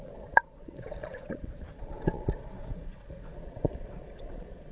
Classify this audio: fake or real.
fake